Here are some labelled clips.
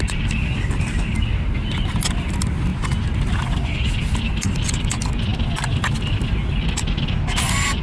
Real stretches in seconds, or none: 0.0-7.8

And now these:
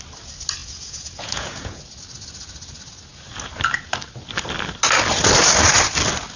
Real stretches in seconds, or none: 0.0-0.6; 1.8-6.4

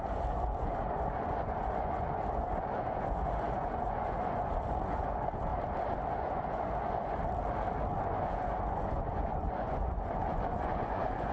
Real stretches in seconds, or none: 5.5-6.1; 7.2-8.0

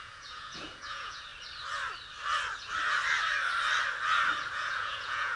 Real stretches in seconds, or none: 1.3-4.5

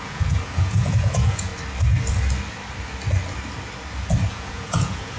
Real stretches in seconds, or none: 1.5-4.3

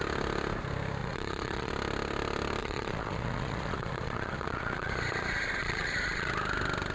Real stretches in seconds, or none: 0.0-1.0; 1.7-2.6; 4.9-5.6; 6.3-6.9

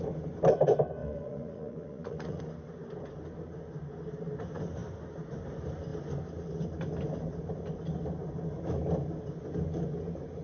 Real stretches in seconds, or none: 0.0-1.0; 2.4-10.4